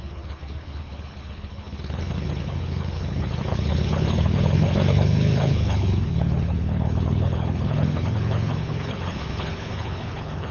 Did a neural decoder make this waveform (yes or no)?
yes